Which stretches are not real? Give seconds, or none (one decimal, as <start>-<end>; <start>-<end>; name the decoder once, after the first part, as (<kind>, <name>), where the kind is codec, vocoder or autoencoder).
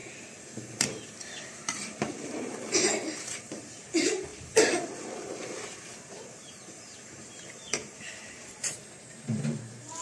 2.1-10.0 (vocoder, BigVGAN v2)